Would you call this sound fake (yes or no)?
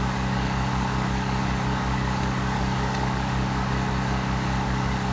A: yes